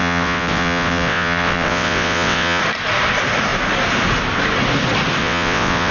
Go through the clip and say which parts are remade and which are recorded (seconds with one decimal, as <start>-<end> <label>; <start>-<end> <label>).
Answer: 0.0-2.6 remade; 2.6-5.2 recorded; 5.2-5.9 remade